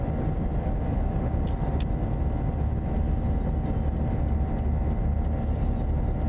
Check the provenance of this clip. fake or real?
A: real